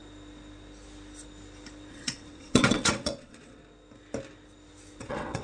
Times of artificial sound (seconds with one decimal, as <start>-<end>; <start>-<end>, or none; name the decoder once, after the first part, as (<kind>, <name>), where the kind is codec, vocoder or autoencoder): 1.9-3.6 (vocoder, WaveNeXt); 5.0-5.4